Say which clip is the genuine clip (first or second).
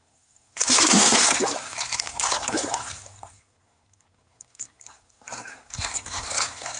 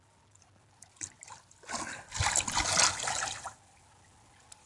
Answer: second